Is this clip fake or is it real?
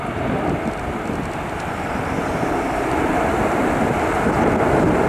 real